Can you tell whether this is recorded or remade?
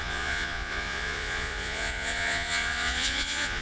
remade